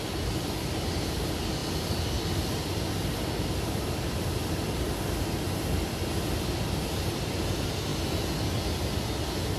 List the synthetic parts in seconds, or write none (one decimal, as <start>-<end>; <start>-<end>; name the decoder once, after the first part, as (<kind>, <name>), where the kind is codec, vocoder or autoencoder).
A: none